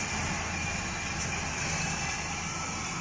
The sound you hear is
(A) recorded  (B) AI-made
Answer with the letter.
A